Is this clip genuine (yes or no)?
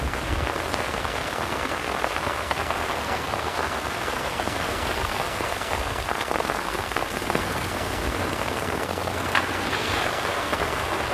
no